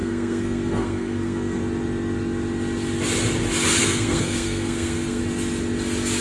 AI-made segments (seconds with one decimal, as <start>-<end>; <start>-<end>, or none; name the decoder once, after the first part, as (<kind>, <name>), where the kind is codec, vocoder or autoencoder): 0.0-1.6 (codec, SNAC); 3.8-5.2

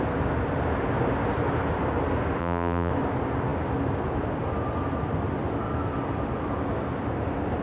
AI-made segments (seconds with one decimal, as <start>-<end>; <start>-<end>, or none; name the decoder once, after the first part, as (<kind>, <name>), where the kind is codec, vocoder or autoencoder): 2.4-2.9 (vocoder, BigVGAN v2)

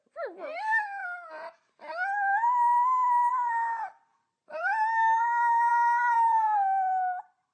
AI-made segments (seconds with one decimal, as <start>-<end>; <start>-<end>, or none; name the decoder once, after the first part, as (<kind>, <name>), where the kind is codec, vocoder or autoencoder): 0.0-1.0 (vocoder, BigVGAN v2); 3.3-7.5

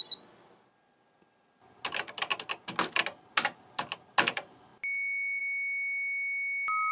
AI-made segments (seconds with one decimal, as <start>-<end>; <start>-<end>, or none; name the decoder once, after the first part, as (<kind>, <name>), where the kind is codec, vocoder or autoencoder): none

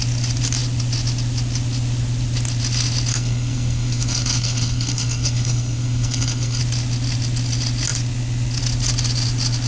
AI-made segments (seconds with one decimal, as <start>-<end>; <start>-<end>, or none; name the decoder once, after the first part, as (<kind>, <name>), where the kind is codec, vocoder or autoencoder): 3.1-6.6 (codec, SNAC)

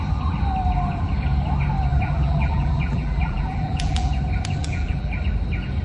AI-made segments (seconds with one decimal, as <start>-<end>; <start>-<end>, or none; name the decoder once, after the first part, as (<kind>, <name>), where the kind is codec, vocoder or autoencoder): 1.9-4.1 (vocoder, BigVGAN v2); 4.6-5.1